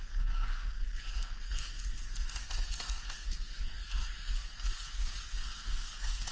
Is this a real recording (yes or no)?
no